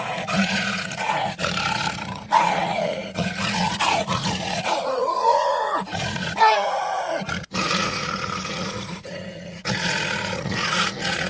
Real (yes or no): no